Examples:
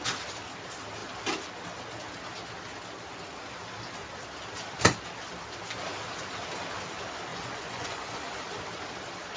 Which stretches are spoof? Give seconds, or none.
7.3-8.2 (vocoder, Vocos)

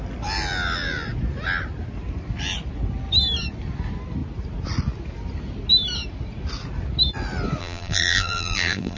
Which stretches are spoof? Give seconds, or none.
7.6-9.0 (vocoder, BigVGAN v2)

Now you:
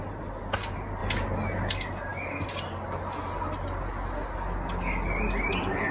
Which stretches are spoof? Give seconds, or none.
none

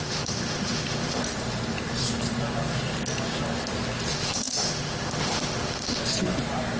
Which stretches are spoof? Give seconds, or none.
0.0-1.2 (autoencoder, DAC-VAE); 4.1-6.0

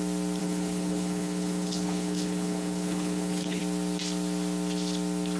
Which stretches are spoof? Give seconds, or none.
0.4-3.6 (codec, HILCodec)

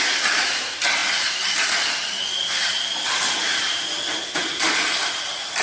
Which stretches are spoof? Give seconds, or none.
none